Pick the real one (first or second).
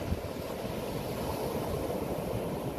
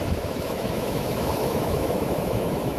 first